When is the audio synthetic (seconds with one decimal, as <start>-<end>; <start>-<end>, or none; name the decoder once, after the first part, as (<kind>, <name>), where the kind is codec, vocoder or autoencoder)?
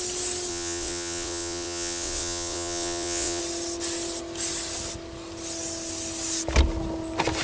0.5-3.4 (vocoder, WaveNeXt)